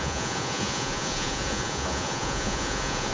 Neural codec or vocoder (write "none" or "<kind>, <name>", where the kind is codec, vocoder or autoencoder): vocoder, Vocos